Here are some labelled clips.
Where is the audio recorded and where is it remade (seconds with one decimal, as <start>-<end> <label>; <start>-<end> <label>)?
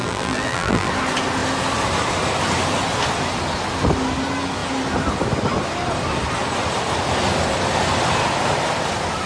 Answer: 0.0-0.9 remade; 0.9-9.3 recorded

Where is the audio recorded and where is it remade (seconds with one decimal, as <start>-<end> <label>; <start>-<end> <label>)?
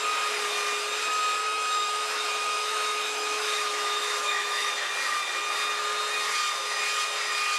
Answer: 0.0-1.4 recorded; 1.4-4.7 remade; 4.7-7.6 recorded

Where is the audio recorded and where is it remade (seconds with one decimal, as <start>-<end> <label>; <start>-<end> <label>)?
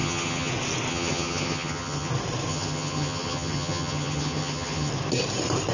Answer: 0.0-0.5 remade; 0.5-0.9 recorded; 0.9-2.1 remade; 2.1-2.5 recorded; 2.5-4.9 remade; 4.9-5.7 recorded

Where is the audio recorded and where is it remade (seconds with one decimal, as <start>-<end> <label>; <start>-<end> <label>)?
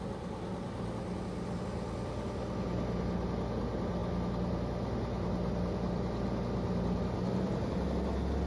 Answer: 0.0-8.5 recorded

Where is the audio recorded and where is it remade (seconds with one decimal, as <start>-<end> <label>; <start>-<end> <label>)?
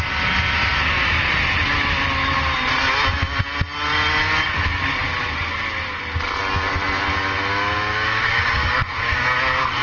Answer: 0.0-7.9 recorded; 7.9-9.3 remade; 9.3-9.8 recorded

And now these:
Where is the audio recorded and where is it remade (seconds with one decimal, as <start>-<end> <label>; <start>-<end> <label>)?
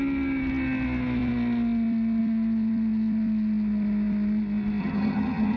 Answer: 0.0-4.8 recorded; 4.8-5.6 remade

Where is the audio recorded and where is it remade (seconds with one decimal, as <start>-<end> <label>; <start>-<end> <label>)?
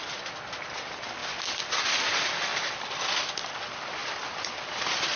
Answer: 0.0-2.5 recorded; 2.5-3.4 remade; 3.4-4.0 recorded; 4.0-4.8 remade; 4.8-5.2 recorded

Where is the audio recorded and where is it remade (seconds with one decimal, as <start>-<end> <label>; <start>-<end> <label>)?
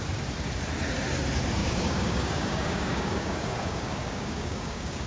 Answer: 0.0-1.6 recorded; 1.6-5.1 remade